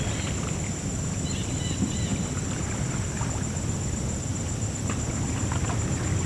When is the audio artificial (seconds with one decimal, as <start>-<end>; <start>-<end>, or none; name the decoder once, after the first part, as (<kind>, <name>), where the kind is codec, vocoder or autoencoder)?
none